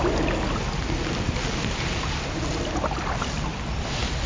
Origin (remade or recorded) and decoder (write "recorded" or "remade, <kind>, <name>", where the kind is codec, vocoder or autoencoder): recorded